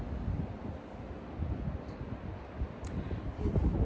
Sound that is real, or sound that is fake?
real